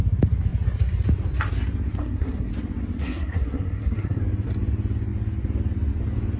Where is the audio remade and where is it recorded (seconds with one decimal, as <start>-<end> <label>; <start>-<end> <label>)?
0.0-2.0 recorded; 2.0-2.5 remade; 2.5-3.0 recorded; 3.0-4.2 remade; 4.2-6.4 recorded

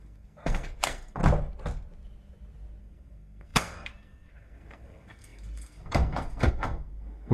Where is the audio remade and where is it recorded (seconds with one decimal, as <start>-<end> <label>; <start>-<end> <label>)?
0.0-1.2 remade; 1.2-2.8 recorded; 2.8-7.3 remade